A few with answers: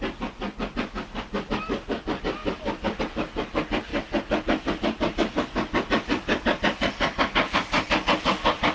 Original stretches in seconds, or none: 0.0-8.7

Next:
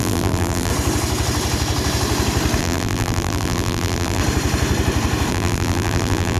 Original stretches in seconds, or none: 0.7-2.6; 4.2-5.3

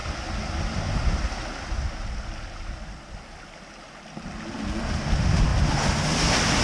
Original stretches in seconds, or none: 0.0-6.6

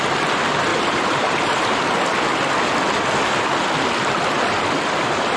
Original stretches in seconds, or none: 0.0-0.7; 1.8-5.4